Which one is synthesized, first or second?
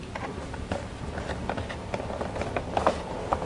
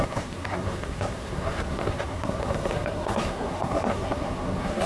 second